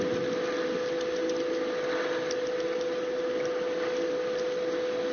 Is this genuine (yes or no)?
yes